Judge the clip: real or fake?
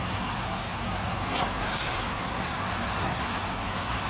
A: fake